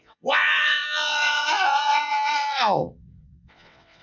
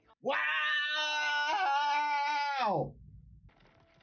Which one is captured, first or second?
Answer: second